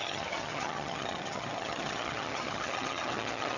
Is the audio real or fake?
fake